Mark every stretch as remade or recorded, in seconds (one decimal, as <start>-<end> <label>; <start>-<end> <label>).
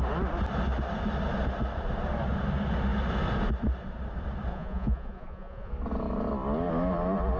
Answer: 0.0-4.5 recorded; 4.5-5.7 remade; 5.7-7.4 recorded